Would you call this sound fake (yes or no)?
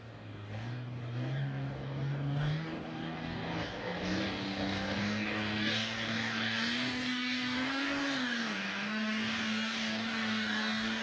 yes